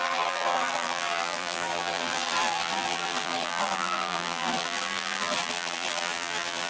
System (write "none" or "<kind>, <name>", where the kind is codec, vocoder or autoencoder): vocoder, BigVGAN v2